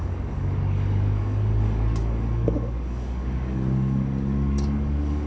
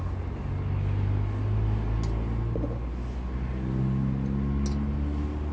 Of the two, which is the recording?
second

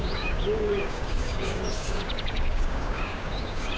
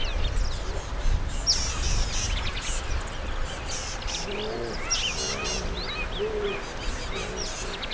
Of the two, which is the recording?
second